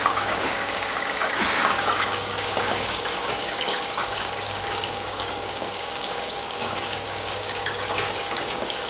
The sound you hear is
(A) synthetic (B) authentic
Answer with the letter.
A